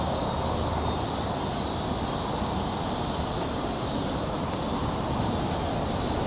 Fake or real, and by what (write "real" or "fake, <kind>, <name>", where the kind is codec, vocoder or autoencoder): real